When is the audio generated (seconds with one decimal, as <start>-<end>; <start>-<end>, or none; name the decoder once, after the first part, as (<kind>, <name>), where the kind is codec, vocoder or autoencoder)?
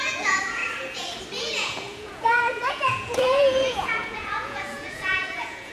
0.0-0.6 (vocoder, Vocos); 1.4-5.7